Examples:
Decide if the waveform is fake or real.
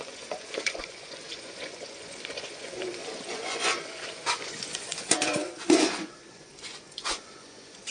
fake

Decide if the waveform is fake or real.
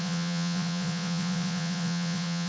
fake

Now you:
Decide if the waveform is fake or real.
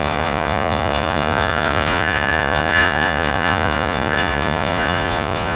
fake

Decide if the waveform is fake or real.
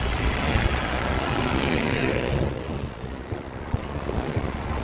fake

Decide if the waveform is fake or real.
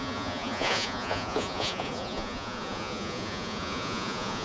fake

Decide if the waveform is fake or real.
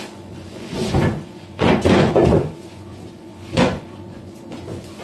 fake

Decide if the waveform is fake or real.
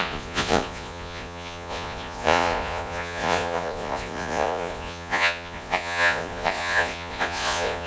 fake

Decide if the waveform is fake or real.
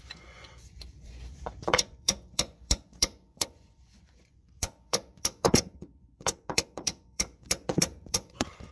fake